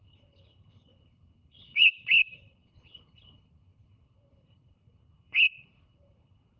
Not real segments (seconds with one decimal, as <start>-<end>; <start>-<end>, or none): 0.0-6.6